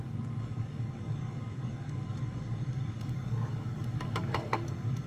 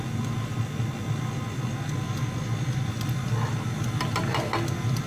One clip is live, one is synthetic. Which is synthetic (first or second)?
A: first